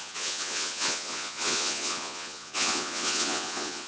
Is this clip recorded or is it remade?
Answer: remade